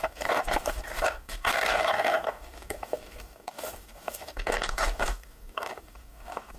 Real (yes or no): no